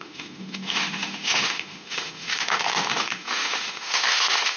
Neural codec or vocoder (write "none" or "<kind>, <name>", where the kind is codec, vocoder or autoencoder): autoencoder, DAC-VAE